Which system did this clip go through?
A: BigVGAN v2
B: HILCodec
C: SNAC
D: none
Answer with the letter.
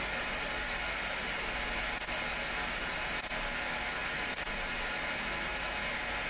D